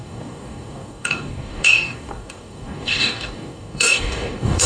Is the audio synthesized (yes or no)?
yes